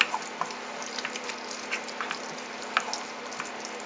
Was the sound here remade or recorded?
recorded